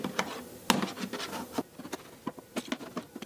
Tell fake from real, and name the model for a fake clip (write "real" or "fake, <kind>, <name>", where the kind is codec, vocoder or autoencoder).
real